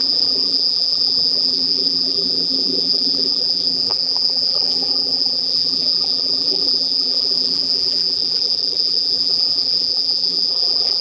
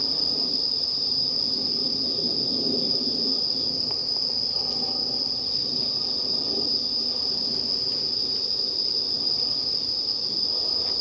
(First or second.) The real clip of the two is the second